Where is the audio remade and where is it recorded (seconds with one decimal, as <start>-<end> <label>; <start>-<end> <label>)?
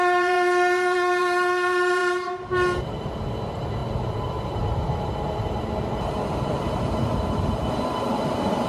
0.0-8.7 remade